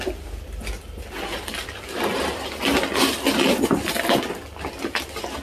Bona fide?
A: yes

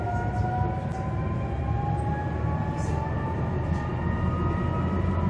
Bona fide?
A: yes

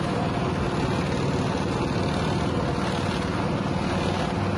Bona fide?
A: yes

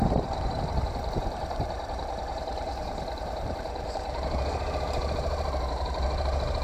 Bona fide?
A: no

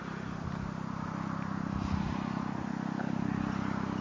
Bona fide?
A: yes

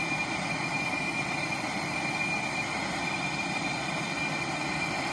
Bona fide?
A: yes